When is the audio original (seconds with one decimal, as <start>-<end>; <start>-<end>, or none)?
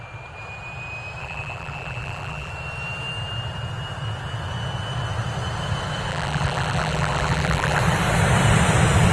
0.0-1.2; 2.5-6.1; 7.8-9.1